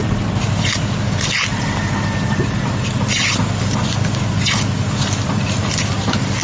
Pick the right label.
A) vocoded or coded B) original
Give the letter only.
A